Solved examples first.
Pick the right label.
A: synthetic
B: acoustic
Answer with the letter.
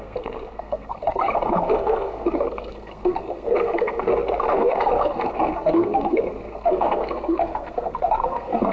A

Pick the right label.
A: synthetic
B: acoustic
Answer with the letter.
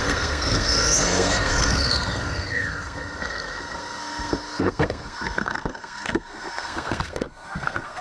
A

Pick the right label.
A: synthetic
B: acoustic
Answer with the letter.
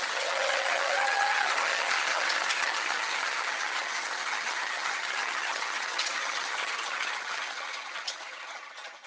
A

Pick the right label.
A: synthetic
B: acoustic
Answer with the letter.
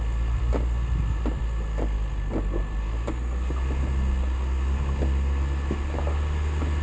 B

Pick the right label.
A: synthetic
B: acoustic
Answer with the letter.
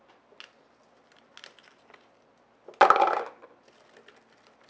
B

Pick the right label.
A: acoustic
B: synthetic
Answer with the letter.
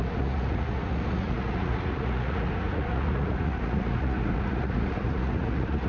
B